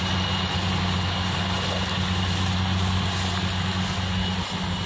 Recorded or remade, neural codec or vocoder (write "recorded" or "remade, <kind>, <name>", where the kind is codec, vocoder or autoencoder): recorded